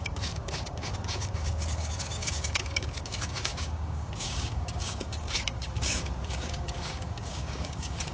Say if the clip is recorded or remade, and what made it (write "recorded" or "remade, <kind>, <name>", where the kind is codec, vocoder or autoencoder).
remade, codec, DAC